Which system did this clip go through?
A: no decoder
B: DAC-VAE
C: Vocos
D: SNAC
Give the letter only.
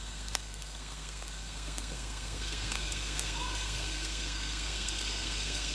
D